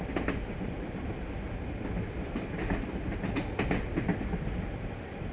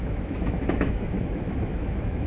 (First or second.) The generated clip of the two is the second